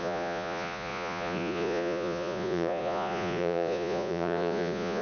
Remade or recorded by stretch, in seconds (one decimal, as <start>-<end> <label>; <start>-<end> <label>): 0.0-5.0 remade

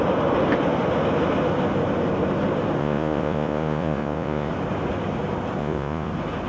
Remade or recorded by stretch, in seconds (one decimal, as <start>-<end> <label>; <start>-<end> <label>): 0.0-2.8 recorded; 2.8-4.5 remade; 4.5-5.6 recorded; 5.6-6.1 remade; 6.1-6.5 recorded

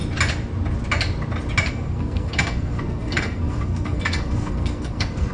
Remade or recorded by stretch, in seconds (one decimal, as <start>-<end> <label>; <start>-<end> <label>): 0.0-1.7 recorded; 1.7-5.3 remade